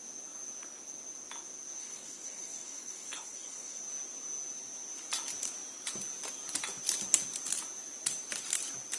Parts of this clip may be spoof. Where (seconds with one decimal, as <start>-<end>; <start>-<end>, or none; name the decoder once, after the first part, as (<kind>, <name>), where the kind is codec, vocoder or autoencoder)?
1.8-3.8 (codec, HILCodec)